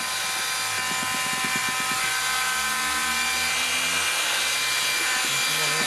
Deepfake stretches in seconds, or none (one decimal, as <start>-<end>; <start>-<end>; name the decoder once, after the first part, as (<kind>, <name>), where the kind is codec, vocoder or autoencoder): none